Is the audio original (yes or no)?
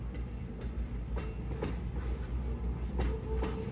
yes